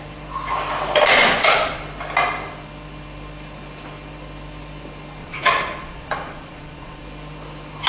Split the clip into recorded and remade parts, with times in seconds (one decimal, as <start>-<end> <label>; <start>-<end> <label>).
0.0-1.2 recorded; 1.2-1.8 remade; 1.8-5.2 recorded; 5.2-7.0 remade; 7.0-7.9 recorded